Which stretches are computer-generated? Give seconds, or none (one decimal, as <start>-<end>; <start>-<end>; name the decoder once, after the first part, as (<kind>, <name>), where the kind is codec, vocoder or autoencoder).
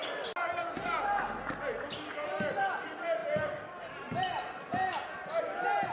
none